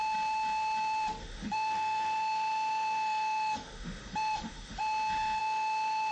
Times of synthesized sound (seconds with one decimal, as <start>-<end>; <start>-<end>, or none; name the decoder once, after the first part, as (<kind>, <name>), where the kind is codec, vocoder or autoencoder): 1.2-4.8 (autoencoder, DAC-VAE); 5.4-6.1